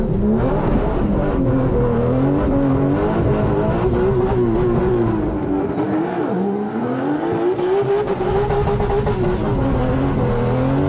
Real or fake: real